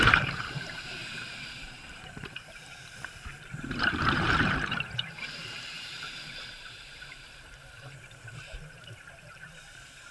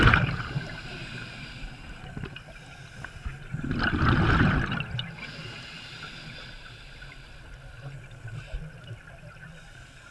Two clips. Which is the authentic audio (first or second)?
second